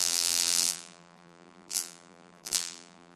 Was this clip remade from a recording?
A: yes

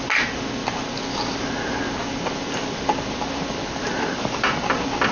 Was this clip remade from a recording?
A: no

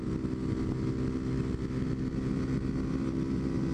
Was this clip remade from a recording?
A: no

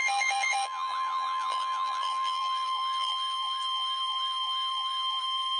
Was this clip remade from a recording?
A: yes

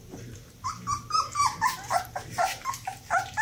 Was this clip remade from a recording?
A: yes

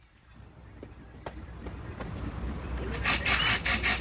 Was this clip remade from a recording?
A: yes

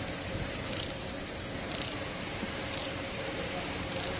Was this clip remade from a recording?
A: yes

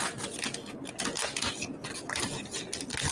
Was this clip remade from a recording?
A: no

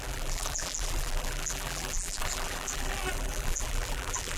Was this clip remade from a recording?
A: yes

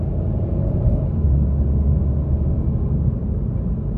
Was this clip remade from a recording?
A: no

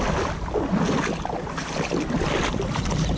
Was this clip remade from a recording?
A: no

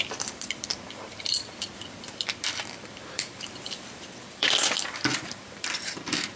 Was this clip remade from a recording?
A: yes